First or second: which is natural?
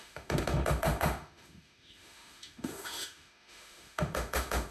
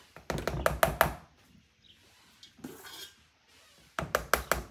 second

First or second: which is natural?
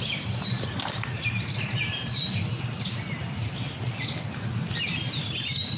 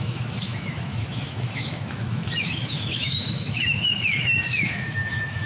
first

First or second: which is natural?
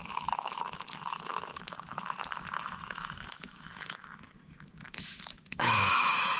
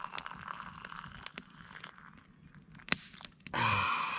second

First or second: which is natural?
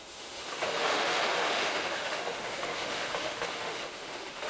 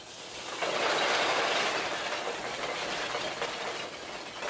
second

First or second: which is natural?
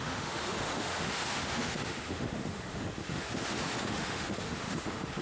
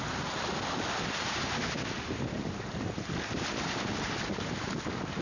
second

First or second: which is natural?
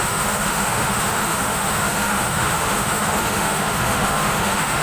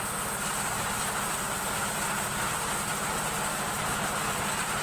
second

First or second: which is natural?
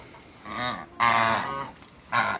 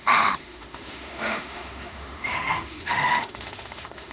first